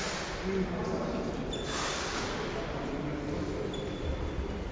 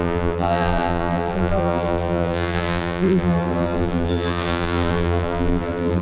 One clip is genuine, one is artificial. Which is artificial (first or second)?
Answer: second